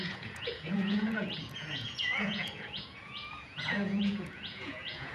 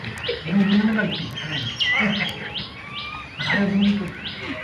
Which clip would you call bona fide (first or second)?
second